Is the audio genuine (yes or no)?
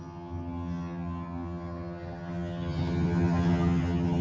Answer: no